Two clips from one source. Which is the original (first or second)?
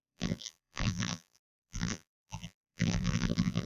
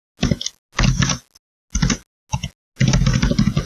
second